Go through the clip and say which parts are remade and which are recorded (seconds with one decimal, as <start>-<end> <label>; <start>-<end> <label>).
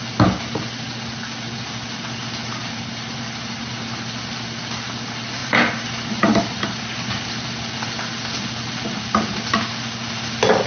0.0-2.4 recorded; 2.4-3.7 remade; 3.7-5.4 recorded; 5.4-7.4 remade; 7.4-10.7 recorded